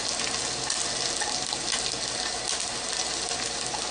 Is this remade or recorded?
recorded